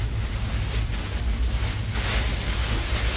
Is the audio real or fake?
real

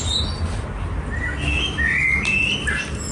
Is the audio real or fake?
real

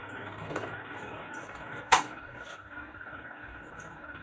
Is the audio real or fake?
fake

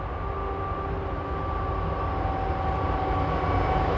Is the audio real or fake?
real